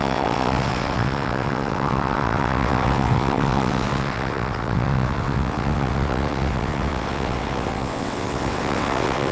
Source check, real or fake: fake